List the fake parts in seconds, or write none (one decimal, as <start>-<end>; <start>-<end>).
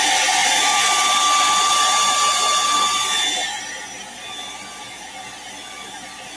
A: none